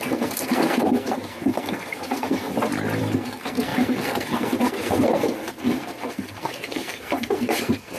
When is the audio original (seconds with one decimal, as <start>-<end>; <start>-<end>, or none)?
2.5-3.0